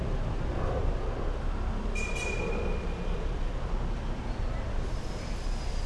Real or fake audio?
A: real